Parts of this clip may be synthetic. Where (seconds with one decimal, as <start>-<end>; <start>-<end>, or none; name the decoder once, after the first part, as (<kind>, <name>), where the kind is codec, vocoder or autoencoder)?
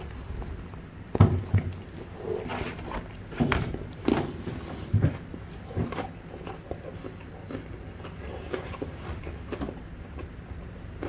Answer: none